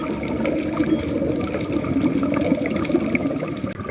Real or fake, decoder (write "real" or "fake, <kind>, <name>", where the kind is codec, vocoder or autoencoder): real